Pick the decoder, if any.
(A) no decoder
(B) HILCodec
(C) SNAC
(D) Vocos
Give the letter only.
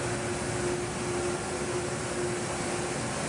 A